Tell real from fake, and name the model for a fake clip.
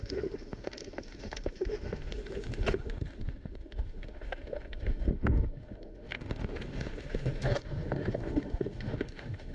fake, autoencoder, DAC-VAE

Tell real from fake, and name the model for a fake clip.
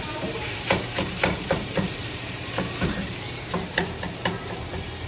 fake, vocoder, BigVGAN v2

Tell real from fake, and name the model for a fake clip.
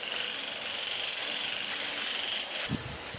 real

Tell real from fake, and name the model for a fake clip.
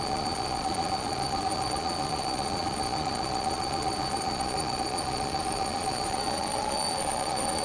fake, vocoder, Vocos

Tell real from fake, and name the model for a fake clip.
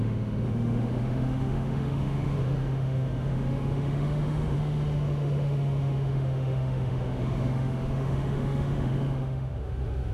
fake, autoencoder, DAC-VAE